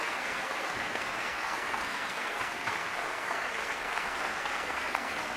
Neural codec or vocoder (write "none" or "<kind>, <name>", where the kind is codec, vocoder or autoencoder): codec, SNAC